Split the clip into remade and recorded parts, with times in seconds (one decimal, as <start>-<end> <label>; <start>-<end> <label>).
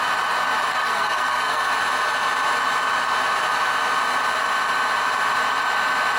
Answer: 0.0-0.7 recorded; 0.7-1.6 remade; 1.6-6.2 recorded